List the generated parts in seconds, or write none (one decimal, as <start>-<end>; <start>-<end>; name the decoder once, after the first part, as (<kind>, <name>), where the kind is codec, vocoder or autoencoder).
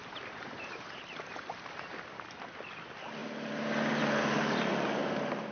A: 0.0-1.9 (vocoder, BigVGAN v2); 3.2-4.7